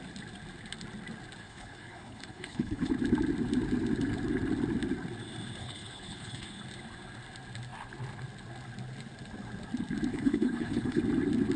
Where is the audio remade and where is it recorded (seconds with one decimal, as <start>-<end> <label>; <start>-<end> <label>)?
0.0-1.4 recorded; 1.4-2.9 remade; 2.9-5.6 recorded; 5.6-6.6 remade; 6.6-10.1 recorded; 10.1-11.0 remade; 11.0-11.6 recorded